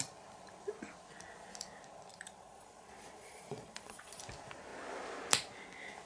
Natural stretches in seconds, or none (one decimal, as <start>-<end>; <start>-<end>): 0.0-2.1; 4.2-6.1